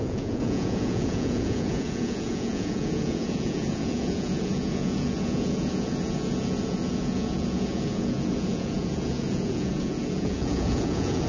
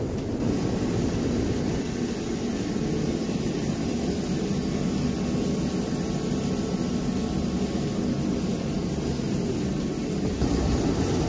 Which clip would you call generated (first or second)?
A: first